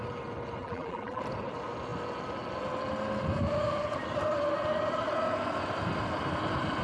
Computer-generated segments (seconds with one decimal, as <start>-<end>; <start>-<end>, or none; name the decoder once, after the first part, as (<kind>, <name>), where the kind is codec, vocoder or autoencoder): 0.6-1.2 (vocoder, BigVGAN v2)